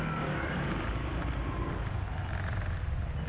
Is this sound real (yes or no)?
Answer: yes